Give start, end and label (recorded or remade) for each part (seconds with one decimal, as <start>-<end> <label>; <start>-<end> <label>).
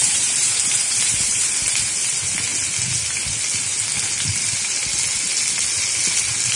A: 0.0-2.1 remade; 2.1-6.6 recorded